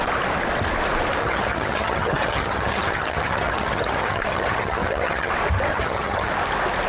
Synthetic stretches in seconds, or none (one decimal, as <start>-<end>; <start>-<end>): 1.2-5.3; 5.7-6.3